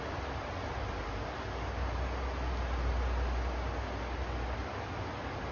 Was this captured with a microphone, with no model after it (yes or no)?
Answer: yes